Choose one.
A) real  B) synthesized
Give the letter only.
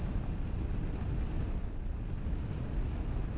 A